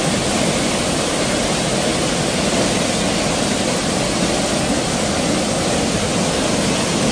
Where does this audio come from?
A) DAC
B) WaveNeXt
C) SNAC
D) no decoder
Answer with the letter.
D